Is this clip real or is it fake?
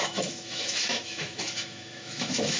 fake